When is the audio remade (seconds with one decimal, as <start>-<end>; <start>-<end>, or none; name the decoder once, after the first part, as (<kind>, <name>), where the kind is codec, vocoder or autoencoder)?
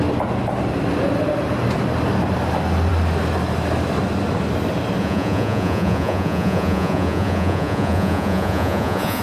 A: 5.0-9.2 (vocoder, Vocos)